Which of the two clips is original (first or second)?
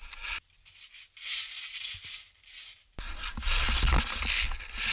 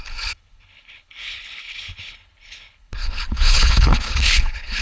first